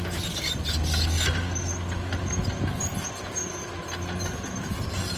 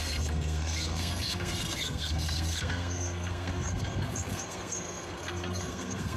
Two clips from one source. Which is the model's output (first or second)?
second